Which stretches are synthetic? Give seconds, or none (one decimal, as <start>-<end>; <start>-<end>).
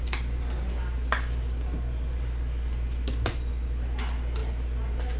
none